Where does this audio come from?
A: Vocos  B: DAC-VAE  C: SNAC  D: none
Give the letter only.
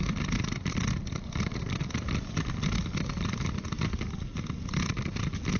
D